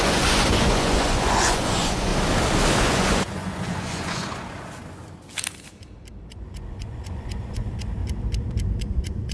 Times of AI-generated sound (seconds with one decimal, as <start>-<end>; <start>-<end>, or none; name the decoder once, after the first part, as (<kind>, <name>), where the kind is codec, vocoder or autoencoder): 0.0-2.1 (vocoder, Vocos); 2.8-5.0; 6.3-8.0; 8.8-9.3